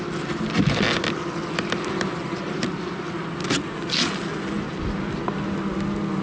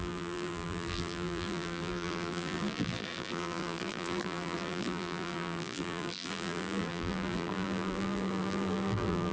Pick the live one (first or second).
first